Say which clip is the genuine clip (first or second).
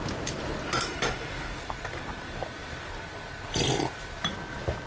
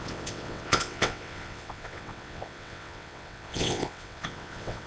first